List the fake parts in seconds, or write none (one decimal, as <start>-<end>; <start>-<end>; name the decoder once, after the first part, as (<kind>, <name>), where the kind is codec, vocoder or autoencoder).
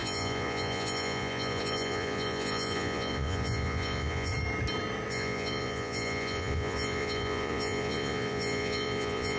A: 0.0-4.3 (vocoder, Vocos); 5.1-9.4